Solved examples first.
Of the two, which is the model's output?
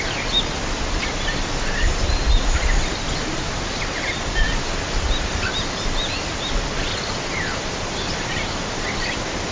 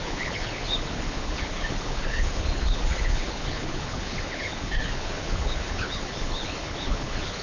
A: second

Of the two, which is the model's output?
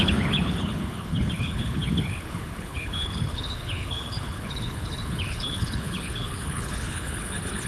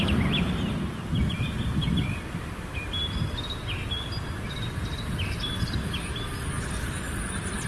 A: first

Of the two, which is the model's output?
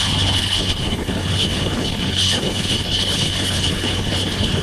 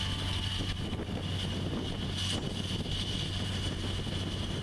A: first